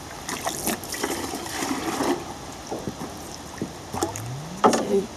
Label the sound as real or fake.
real